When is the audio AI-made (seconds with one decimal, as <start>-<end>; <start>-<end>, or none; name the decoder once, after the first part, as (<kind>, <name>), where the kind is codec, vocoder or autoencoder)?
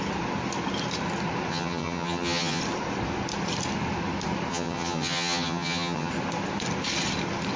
1.5-2.6 (vocoder, HiFi-GAN); 4.5-6.1